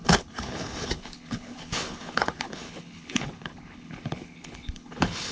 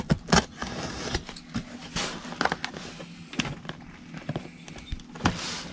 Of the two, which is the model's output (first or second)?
first